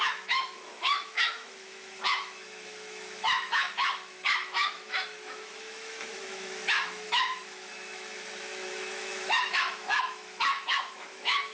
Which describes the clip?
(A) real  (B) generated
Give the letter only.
B